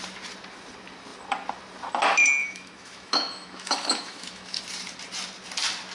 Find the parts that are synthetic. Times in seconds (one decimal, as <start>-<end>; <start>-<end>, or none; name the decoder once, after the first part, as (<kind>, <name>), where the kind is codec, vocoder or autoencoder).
2.4-4.6 (autoencoder, DAC-VAE)